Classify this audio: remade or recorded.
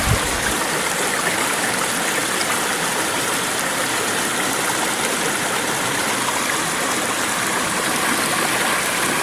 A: remade